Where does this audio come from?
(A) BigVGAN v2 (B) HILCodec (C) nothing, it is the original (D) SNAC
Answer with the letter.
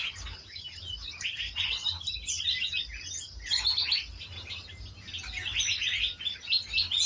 C